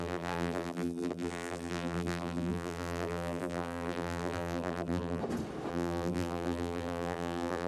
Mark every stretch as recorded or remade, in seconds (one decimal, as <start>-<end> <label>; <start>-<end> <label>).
0.0-5.2 remade; 5.2-5.7 recorded; 5.7-7.7 remade